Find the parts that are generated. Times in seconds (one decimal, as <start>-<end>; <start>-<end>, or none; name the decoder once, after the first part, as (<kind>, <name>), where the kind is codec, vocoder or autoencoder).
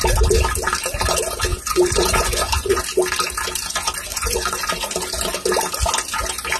1.5-2.8 (vocoder, Vocos); 4.1-4.7